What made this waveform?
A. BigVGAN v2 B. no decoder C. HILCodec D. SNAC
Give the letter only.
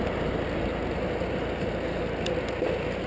B